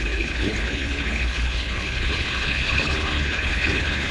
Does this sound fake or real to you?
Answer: fake